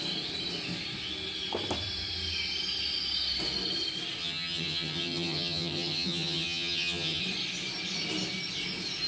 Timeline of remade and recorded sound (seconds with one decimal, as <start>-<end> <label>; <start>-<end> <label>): 0.0-4.2 recorded; 4.2-7.2 remade; 7.2-9.1 recorded